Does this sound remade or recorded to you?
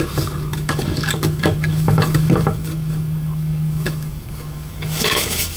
remade